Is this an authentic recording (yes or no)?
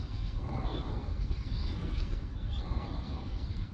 no